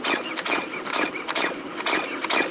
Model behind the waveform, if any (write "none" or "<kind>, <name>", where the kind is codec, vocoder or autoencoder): none